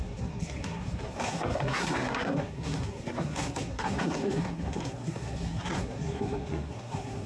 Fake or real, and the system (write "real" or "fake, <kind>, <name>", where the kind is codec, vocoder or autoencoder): fake, codec, SNAC